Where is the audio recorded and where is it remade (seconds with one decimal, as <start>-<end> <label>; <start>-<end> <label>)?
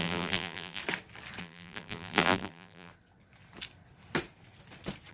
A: 0.0-0.8 remade; 0.8-1.4 recorded; 1.4-2.9 remade; 2.9-5.1 recorded